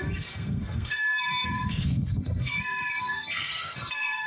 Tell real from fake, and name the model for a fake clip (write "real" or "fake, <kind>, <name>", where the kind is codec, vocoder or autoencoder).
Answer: fake, codec, SNAC